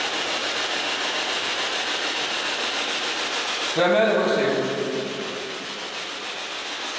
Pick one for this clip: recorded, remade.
recorded